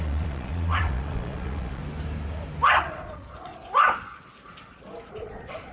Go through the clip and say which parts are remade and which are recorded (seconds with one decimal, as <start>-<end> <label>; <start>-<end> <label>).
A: 0.0-1.8 remade; 1.8-2.8 recorded; 2.8-3.5 remade; 3.5-5.1 recorded; 5.1-5.7 remade